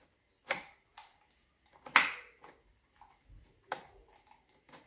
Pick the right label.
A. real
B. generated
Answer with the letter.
A